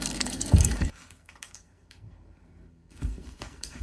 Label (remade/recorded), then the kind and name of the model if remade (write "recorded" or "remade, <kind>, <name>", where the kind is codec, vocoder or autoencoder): remade, codec, SNAC